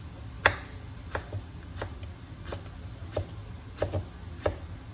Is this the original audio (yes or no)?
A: yes